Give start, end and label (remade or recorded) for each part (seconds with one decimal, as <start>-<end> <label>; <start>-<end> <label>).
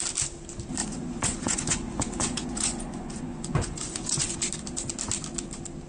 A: 0.0-0.8 recorded; 0.8-4.3 remade; 4.3-5.9 recorded